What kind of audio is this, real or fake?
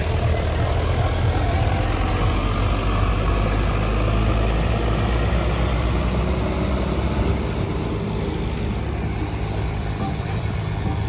real